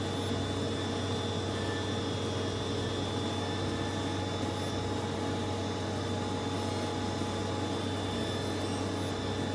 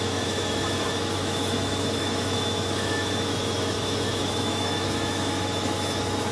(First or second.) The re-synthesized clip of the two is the second